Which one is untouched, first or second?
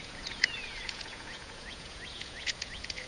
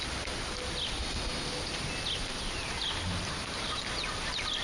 second